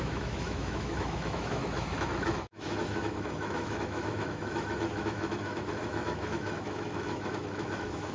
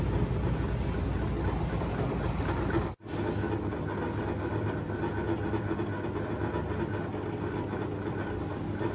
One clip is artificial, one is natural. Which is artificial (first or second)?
first